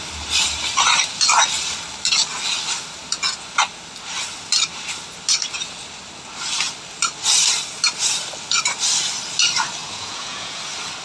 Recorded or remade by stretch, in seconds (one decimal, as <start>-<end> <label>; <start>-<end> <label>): 0.0-9.8 recorded; 9.8-10.6 remade; 10.6-11.0 recorded